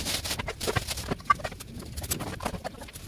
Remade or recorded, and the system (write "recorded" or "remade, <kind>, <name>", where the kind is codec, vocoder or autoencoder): remade, vocoder, BigVGAN v2